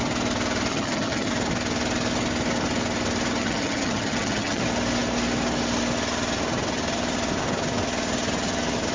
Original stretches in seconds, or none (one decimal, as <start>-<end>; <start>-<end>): 0.0-0.7; 1.3-3.4; 4.6-8.9